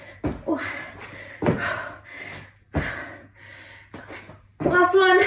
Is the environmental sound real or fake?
real